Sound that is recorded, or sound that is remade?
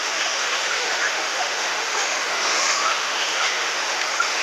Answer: remade